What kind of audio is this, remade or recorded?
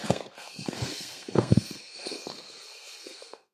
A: remade